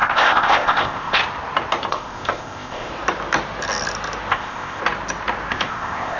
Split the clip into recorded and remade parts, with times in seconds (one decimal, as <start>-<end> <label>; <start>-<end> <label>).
0.0-1.2 remade; 1.2-1.9 recorded; 1.9-2.9 remade; 2.9-4.3 recorded; 4.3-4.8 remade; 4.8-5.5 recorded; 5.5-6.2 remade